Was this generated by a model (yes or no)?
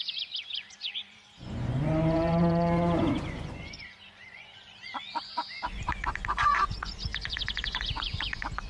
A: yes